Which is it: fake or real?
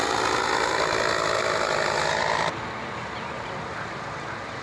real